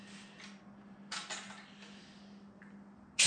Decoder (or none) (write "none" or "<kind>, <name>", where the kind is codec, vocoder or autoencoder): none